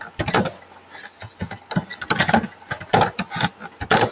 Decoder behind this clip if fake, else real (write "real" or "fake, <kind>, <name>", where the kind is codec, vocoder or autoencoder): real